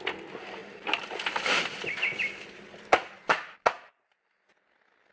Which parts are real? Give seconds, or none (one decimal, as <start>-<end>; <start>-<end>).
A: 0.0-0.6; 3.6-5.1

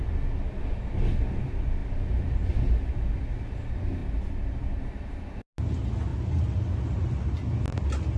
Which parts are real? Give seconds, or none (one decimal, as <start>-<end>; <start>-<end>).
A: 0.0-8.2